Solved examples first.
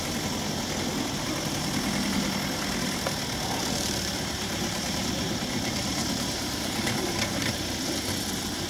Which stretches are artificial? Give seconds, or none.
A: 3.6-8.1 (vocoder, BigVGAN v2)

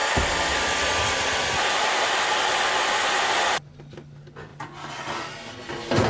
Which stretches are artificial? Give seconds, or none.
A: none

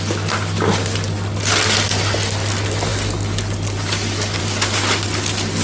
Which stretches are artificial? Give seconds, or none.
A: none

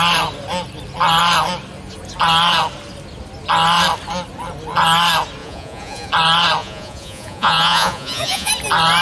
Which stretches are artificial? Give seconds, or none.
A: 5.4-6.1 (vocoder, Vocos); 6.6-8.5

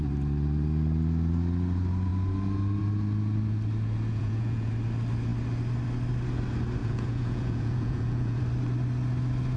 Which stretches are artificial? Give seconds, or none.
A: 4.1-4.7 (vocoder, Vocos); 6.8-8.4

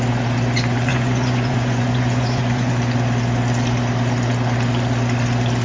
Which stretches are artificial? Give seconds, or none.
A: 0.9-2.7 (vocoder, Vocos)

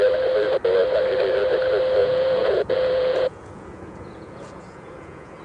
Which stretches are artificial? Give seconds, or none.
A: 2.0-5.4 (vocoder, Vocos)

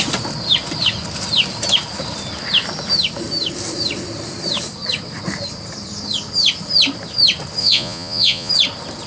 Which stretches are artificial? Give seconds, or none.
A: 7.6-8.5 (vocoder, Vocos)